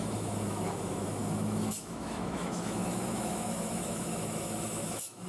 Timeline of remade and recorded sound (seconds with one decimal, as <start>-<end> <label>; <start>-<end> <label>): 0.0-5.3 remade